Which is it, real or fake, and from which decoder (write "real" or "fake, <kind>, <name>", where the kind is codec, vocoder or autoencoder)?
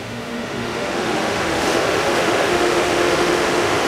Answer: fake, autoencoder, DAC-VAE